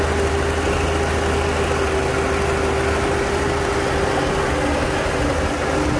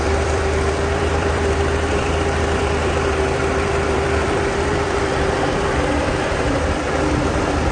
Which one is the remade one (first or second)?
second